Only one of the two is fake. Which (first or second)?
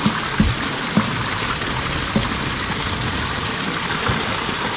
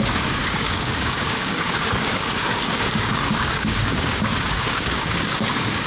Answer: second